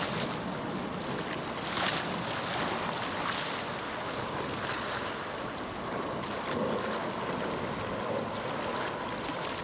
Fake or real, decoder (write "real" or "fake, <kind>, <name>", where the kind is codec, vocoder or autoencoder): real